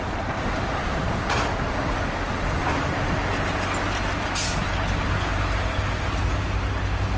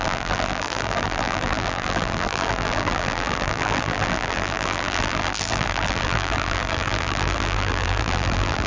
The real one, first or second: first